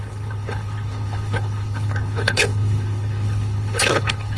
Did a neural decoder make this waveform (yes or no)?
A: yes